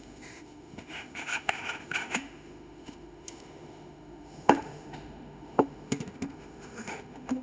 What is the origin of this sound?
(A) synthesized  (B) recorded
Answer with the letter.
A